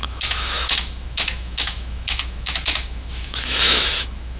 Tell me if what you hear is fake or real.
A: fake